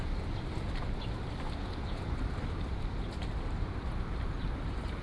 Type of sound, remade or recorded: recorded